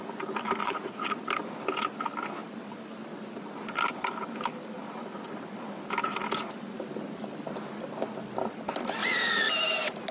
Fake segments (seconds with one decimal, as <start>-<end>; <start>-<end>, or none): 0.6-1.2; 9.0-9.5